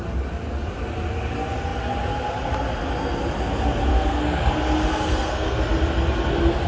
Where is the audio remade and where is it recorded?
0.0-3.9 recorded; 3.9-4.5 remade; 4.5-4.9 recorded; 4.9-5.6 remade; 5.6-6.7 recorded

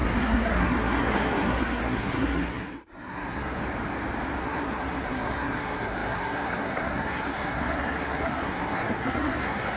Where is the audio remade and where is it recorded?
0.0-3.6 remade; 3.6-4.4 recorded; 4.4-9.8 remade